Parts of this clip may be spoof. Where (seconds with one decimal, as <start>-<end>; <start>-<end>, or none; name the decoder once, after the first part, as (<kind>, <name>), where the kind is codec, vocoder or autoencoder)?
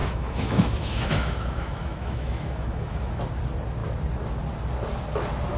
0.0-3.2 (autoencoder, DAC-VAE)